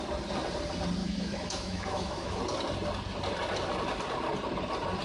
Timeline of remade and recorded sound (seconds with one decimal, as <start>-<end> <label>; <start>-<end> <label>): 0.0-1.0 recorded; 1.0-2.4 remade; 2.4-5.0 recorded